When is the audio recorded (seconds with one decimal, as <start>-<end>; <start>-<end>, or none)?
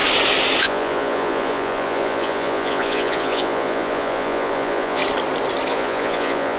0.0-0.6; 5.0-5.7